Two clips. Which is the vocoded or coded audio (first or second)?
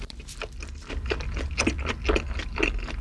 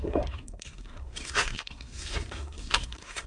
second